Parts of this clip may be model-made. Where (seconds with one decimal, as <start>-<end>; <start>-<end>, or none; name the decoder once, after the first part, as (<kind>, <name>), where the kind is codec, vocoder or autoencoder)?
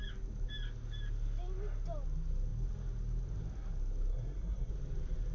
4.1-4.7 (codec, SNAC)